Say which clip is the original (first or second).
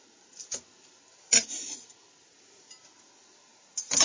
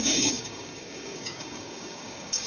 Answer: first